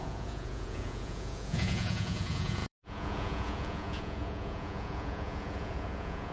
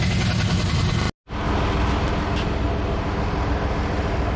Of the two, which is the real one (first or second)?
second